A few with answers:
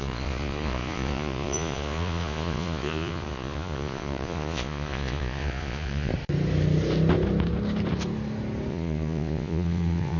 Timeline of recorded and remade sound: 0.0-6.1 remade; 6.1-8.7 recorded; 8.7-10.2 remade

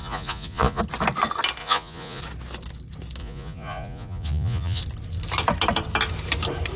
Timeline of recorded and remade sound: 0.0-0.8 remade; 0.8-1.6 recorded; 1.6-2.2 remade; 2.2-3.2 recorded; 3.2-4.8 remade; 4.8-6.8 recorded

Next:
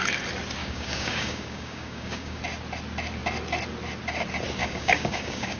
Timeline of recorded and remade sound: 0.0-0.6 recorded; 0.6-2.4 remade; 2.4-4.6 recorded; 4.6-5.6 remade